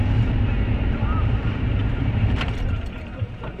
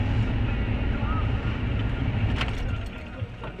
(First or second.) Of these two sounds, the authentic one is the second